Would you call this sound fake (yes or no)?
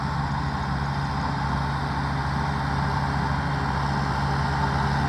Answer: no